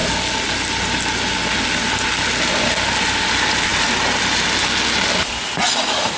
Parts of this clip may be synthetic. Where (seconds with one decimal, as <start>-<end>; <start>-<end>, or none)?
none